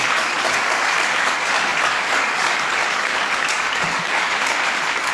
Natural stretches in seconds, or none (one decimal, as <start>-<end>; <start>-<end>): none